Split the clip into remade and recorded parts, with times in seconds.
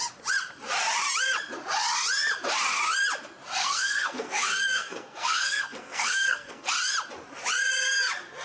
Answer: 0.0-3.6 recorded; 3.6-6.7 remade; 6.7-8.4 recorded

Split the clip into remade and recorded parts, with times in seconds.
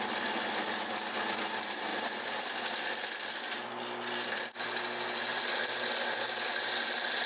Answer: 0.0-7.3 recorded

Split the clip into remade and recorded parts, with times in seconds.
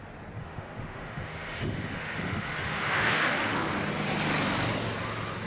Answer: 0.0-0.4 recorded; 0.4-3.7 remade; 3.7-5.5 recorded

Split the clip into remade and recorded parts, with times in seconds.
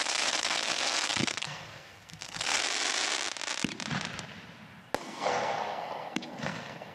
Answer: 0.0-2.6 remade; 2.6-5.0 recorded; 5.0-6.9 remade